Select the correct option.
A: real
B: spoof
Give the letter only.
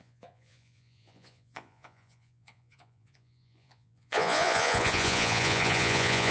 B